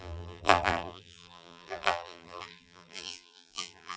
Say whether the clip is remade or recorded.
remade